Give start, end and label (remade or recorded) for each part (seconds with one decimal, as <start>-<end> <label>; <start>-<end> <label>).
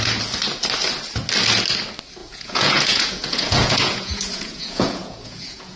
0.0-2.2 recorded; 2.2-5.8 remade